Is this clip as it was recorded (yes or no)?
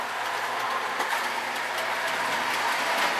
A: yes